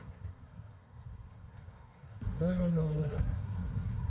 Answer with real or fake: fake